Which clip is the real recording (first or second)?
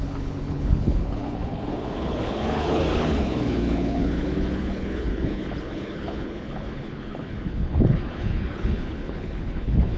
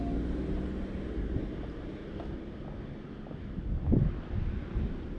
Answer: second